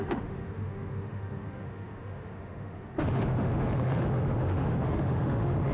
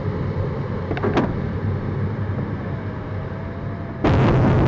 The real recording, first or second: second